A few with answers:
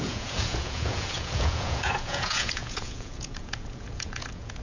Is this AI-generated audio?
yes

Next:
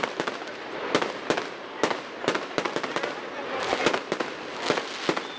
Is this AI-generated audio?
no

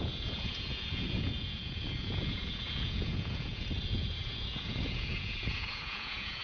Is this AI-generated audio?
yes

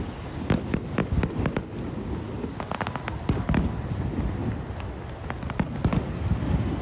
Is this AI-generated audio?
no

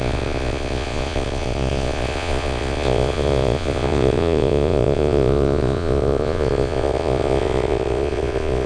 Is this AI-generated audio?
yes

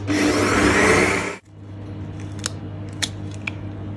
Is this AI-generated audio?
no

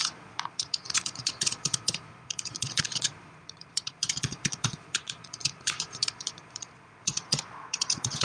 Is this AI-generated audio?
yes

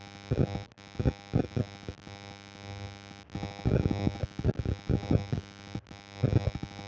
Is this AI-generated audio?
no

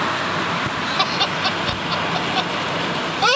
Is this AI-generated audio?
no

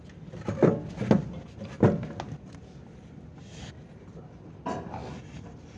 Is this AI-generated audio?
no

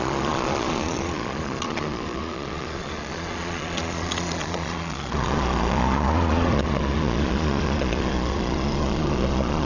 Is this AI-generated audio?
yes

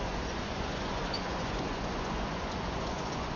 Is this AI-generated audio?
yes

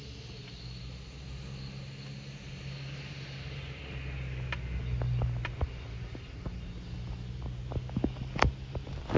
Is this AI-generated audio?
no